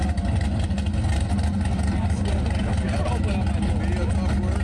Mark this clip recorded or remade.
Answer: recorded